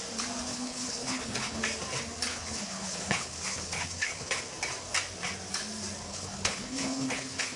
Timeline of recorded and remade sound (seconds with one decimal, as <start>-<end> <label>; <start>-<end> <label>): 0.0-0.5 recorded; 0.5-1.6 remade; 1.6-2.3 recorded; 2.3-4.4 remade; 4.4-6.1 recorded; 6.1-7.6 remade